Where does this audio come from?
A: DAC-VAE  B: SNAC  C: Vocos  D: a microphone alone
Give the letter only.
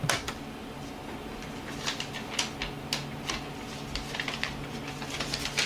D